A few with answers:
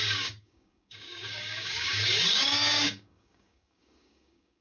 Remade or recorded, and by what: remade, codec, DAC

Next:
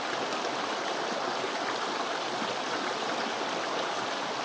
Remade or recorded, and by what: recorded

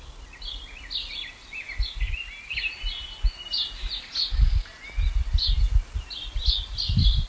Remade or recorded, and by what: recorded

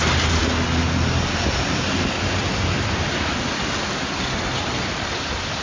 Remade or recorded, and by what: recorded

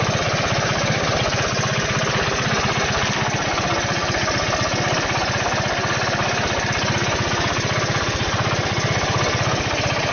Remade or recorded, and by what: recorded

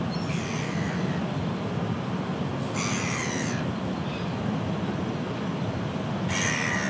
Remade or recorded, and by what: recorded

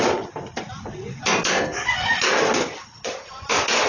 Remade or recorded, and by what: recorded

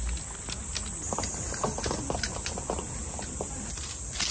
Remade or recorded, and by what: recorded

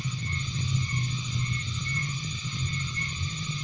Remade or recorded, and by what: recorded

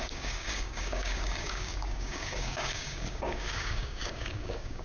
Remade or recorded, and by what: remade, codec, DAC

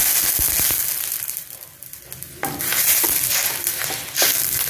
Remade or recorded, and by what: recorded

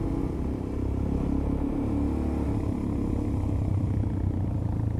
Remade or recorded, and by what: recorded